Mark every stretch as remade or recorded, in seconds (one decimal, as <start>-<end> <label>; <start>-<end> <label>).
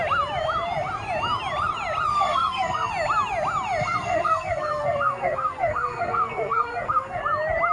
0.0-2.1 recorded; 2.1-2.9 remade; 2.9-3.8 recorded; 3.8-7.2 remade; 7.2-7.7 recorded